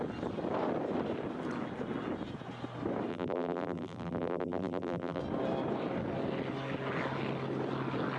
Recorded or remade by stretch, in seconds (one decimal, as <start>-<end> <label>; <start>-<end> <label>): 0.0-3.1 recorded; 3.1-5.2 remade; 5.2-8.2 recorded